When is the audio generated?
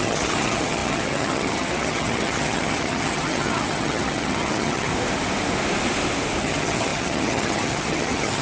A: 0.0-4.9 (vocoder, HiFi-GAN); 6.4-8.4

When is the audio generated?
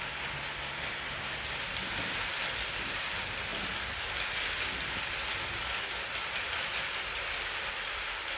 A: none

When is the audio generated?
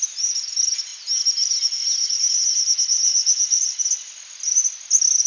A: none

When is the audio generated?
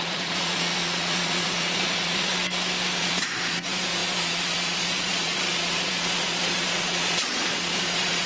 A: 0.0-2.3 (vocoder, Vocos); 3.0-8.3